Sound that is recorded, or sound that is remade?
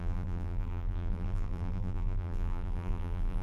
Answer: remade